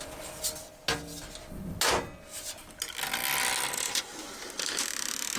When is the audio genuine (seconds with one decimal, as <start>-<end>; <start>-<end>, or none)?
0.0-5.4